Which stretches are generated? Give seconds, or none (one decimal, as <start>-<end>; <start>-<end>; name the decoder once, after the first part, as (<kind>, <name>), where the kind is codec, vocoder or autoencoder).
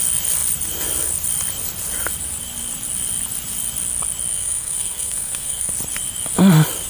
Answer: 4.3-5.7 (codec, SNAC)